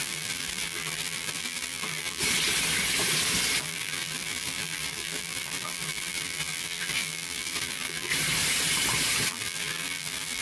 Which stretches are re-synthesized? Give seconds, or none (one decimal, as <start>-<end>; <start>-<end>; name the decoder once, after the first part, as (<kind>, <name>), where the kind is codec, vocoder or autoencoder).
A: 0.0-2.2 (vocoder, BigVGAN v2); 3.6-8.1; 9.3-10.4

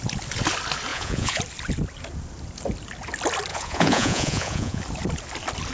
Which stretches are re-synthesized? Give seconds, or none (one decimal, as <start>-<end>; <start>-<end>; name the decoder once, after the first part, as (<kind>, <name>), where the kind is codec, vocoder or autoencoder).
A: 0.9-1.4 (vocoder, Vocos); 3.5-4.8